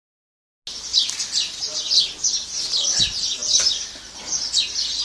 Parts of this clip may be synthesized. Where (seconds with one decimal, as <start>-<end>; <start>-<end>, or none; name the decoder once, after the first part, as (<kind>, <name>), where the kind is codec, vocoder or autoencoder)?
none